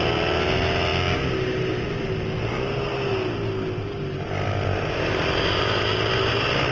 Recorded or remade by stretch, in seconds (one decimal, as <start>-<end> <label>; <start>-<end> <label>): 0.0-6.7 recorded